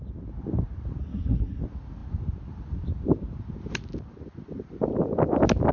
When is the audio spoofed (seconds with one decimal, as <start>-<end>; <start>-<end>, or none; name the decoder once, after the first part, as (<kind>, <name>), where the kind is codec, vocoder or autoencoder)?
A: 1.0-1.6 (codec, SNAC)